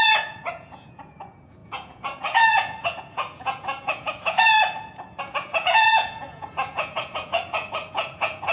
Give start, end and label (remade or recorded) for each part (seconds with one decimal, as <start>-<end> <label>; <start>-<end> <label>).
0.0-8.5 remade